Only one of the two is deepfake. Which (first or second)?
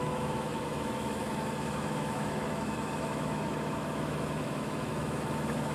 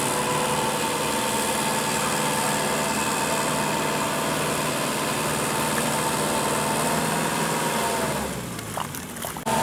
first